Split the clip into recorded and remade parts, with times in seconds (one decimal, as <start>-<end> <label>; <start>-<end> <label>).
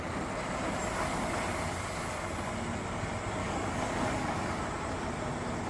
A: 0.0-3.4 recorded; 3.4-4.6 remade; 4.6-5.7 recorded